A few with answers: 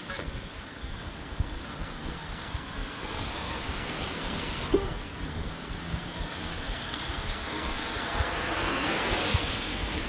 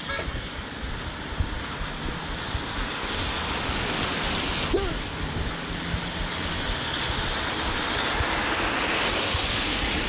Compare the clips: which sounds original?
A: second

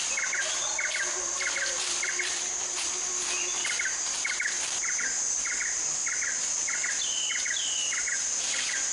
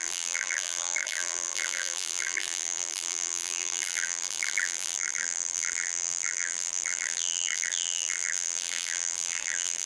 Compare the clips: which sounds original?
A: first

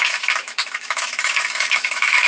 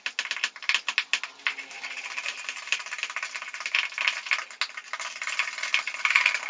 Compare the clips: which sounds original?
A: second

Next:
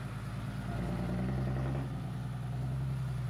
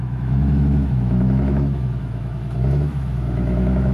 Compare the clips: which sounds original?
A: first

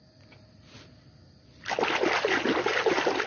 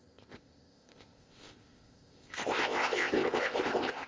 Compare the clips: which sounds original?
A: first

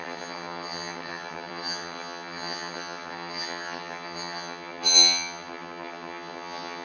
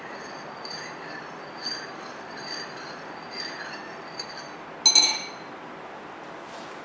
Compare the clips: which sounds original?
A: second